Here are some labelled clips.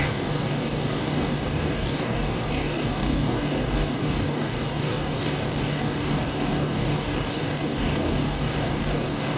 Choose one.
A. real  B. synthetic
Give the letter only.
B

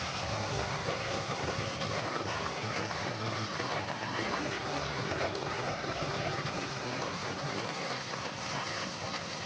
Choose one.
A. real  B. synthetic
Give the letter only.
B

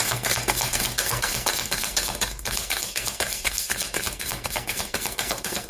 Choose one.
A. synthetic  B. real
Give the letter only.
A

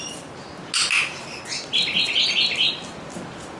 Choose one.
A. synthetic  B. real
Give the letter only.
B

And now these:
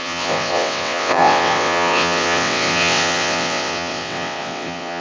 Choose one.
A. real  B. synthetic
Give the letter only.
B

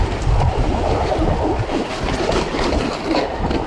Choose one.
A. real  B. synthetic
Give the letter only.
A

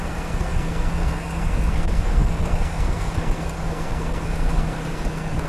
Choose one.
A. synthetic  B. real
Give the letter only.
A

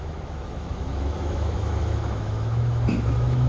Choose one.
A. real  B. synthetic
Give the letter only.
B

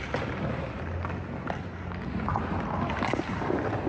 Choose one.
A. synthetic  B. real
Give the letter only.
B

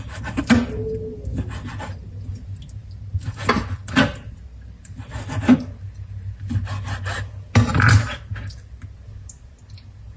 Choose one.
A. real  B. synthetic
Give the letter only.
A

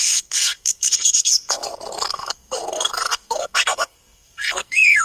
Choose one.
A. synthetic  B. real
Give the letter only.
A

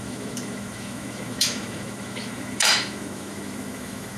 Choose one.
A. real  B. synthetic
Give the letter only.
B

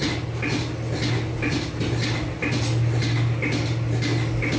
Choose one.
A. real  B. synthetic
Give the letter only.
A